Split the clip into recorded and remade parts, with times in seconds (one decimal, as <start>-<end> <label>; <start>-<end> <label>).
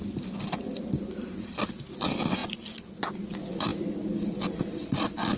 0.0-5.4 recorded